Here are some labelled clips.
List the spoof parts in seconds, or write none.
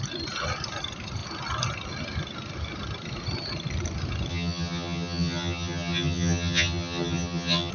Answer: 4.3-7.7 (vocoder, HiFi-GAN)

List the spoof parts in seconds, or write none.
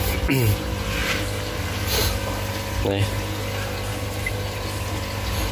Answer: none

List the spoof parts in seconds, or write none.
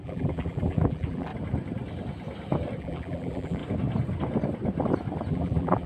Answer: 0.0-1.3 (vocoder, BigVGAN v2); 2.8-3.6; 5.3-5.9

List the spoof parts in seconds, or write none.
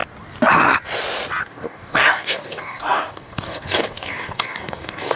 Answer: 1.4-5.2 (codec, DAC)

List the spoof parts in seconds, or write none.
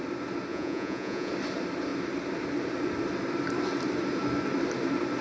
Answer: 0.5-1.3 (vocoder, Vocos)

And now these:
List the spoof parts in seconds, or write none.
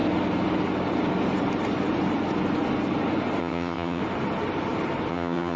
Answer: 3.4-4.0 (vocoder, HiFi-GAN); 5.1-5.6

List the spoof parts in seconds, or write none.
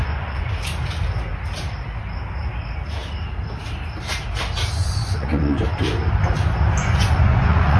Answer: 0.0-0.5 (vocoder, Vocos); 4.8-5.6; 6.8-7.8